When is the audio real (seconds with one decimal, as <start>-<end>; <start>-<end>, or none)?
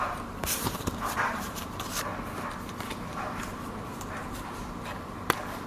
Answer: 2.1-4.1